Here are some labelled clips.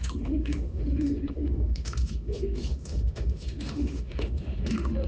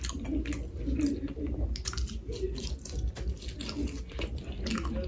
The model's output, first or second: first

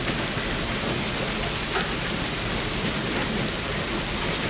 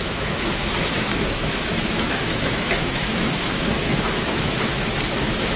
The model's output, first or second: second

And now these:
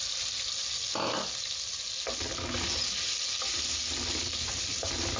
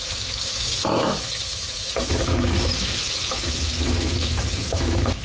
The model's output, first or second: second